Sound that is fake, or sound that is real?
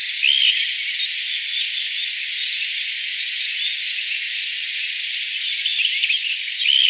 real